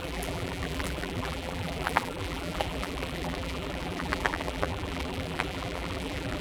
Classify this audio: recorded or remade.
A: remade